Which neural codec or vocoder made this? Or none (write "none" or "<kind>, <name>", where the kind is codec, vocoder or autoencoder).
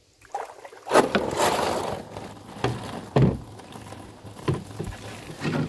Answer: none